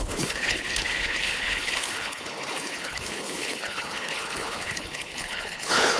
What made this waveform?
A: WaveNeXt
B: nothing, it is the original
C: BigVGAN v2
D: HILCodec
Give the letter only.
D